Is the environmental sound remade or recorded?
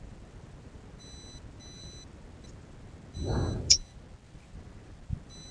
recorded